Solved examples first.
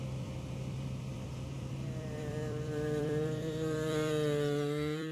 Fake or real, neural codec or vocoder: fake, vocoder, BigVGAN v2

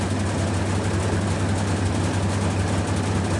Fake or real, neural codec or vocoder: real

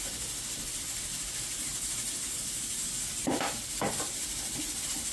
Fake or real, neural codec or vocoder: fake, vocoder, BigVGAN v2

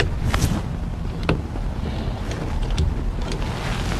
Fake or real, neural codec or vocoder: real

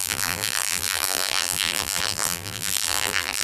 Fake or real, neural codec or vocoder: fake, vocoder, BigVGAN v2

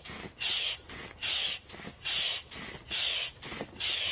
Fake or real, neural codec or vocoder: real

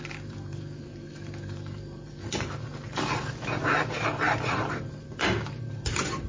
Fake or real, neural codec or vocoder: fake, vocoder, BigVGAN v2